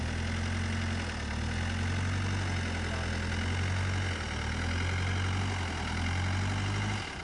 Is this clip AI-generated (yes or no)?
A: no